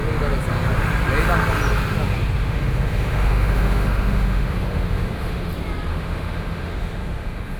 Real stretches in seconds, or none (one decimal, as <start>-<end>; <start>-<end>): 0.0-2.4; 5.5-5.9